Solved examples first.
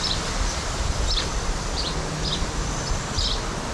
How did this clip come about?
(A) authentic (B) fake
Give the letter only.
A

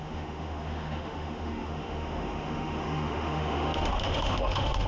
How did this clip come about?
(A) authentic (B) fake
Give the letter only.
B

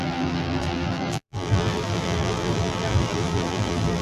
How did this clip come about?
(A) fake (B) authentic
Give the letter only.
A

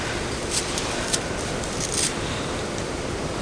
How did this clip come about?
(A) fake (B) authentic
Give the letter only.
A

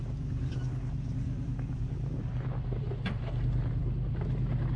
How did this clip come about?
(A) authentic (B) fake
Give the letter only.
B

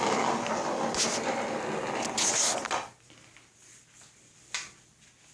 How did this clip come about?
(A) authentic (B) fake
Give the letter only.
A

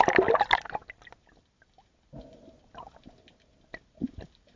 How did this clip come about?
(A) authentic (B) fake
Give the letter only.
A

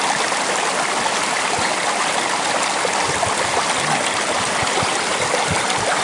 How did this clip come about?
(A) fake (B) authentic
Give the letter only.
B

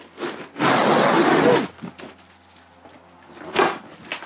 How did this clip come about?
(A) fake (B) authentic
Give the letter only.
B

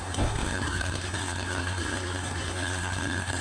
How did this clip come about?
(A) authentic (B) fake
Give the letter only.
B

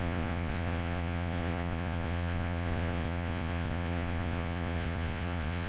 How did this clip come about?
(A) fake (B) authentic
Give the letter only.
A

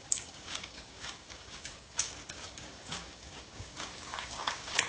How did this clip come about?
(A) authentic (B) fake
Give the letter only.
B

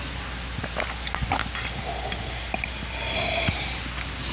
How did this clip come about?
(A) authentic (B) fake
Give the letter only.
A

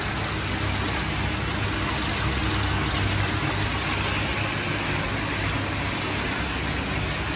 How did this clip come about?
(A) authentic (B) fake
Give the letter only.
A